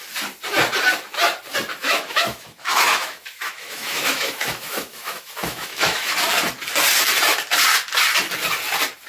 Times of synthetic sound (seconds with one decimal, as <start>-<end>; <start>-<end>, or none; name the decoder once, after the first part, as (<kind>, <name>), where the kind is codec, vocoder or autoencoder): 1.8-6.1 (autoencoder, DAC-VAE)